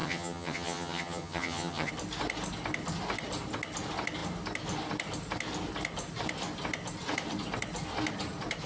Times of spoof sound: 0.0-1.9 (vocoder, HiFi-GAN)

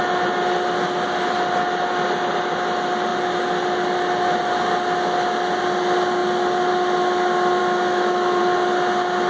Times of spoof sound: 7.6-8.4 (autoencoder, DAC-VAE)

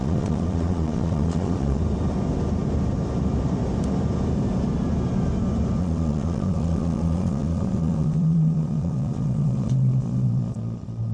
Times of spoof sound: 0.0-1.8 (vocoder, Vocos); 5.8-11.1

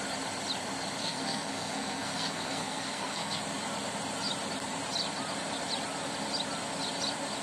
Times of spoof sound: 1.0-3.4 (codec, SNAC)

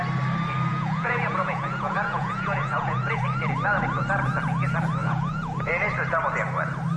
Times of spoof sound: 0.7-3.2 (vocoder, Vocos); 5.0-5.7